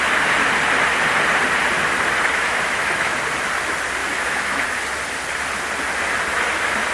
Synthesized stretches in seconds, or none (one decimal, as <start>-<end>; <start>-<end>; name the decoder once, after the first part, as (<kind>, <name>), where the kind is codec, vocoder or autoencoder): 2.3-3.2 (autoencoder, DAC-VAE); 4.0-4.6